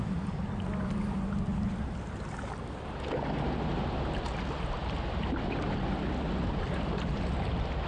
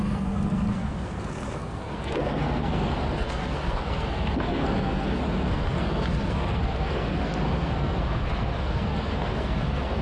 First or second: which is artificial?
second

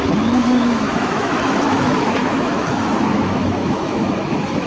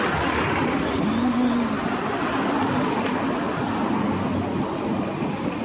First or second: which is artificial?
first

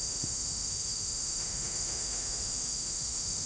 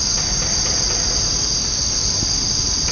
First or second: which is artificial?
first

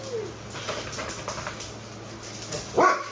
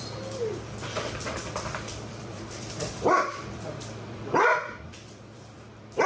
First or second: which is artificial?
second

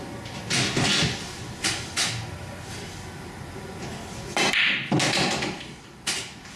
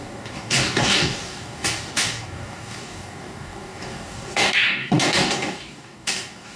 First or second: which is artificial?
second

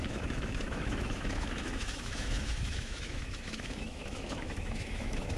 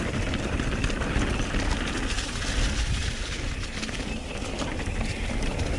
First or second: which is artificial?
first